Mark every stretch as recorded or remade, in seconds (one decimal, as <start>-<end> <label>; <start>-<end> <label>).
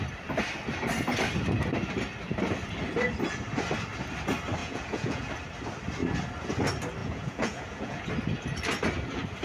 0.0-4.6 recorded; 4.6-5.3 remade; 5.3-7.0 recorded; 7.0-8.1 remade; 8.1-9.4 recorded